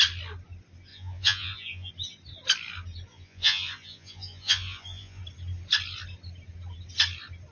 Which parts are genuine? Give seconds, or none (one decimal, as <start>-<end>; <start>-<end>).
0.0-0.9; 1.9-3.1; 5.2-7.5

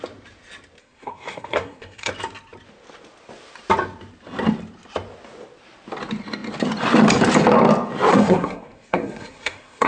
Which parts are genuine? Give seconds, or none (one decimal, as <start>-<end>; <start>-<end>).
0.0-0.8; 2.1-8.1

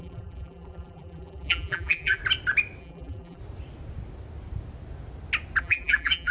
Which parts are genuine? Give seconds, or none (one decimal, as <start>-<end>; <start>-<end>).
2.2-2.8; 3.4-5.6

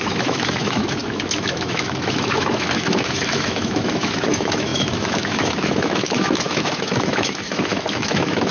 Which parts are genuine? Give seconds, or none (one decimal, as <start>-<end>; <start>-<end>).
none

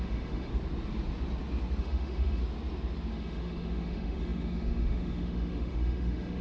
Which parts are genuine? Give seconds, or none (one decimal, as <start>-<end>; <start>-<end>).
0.5-1.8; 2.4-3.1

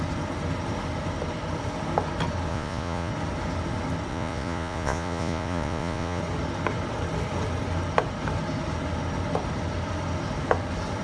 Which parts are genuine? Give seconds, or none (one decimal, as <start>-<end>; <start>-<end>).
0.0-2.5; 3.1-4.1; 6.2-11.0